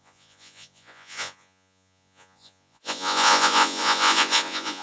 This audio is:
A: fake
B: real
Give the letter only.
A